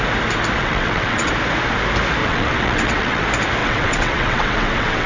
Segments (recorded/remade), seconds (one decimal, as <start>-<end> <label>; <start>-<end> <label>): 0.0-0.6 recorded; 0.6-1.3 remade; 1.3-2.2 recorded; 2.2-3.2 remade; 3.2-3.6 recorded; 3.6-5.1 remade